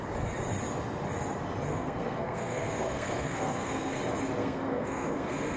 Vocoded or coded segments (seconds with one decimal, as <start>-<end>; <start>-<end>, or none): 1.7-4.0; 4.4-5.6